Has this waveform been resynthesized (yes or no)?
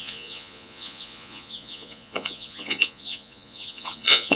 yes